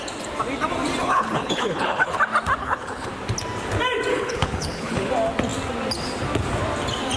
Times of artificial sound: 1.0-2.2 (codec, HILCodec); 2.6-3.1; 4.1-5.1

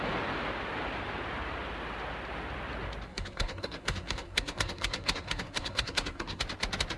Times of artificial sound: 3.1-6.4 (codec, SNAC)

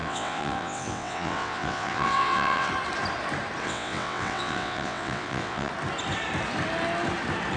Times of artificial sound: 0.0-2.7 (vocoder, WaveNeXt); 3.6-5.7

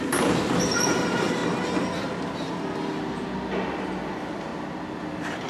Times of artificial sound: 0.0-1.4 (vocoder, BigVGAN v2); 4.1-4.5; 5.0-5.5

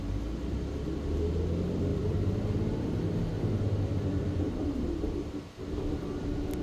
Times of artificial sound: 1.9-5.3 (vocoder, BigVGAN v2)

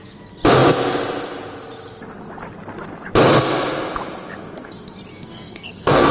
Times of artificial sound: 5.1-6.1 (codec, SNAC)

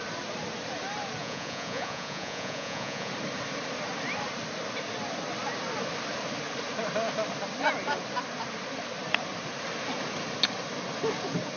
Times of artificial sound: 1.2-3.1 (vocoder, Vocos)